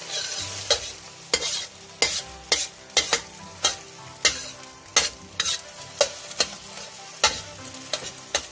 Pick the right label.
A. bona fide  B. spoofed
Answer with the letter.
A